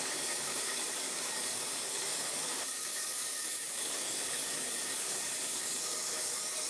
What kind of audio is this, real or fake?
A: fake